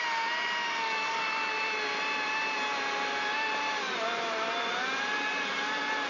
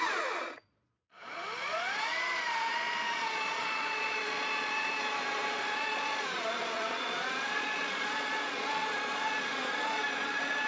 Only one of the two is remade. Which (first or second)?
second